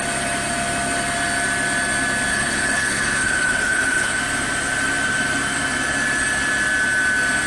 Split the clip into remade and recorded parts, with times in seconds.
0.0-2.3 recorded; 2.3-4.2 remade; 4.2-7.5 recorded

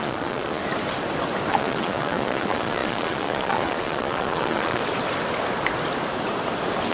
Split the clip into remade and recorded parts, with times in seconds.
0.0-0.6 remade; 0.6-1.5 recorded; 1.5-4.8 remade; 4.8-6.9 recorded

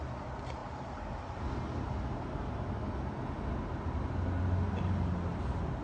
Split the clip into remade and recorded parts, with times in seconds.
0.0-5.8 recorded

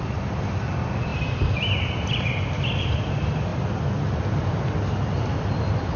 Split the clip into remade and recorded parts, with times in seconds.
0.0-3.5 remade; 3.5-5.0 recorded; 5.0-6.0 remade

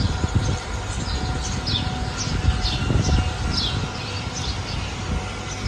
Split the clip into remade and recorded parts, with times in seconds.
0.0-5.7 recorded

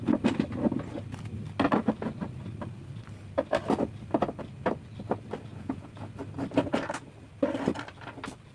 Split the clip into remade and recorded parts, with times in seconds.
0.0-5.5 recorded; 5.5-6.1 remade; 6.1-8.5 recorded

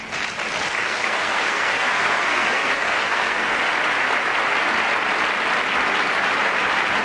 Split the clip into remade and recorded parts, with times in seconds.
0.0-0.8 recorded; 0.8-3.6 remade; 3.6-7.0 recorded

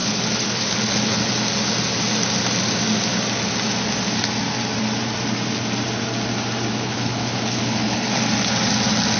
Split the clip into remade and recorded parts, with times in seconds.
0.0-1.3 remade; 1.3-6.7 recorded; 6.7-8.2 remade; 8.2-9.2 recorded